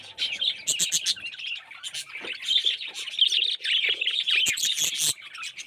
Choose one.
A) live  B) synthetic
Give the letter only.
A